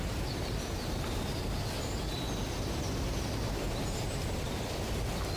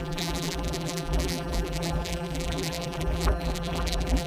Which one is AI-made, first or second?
second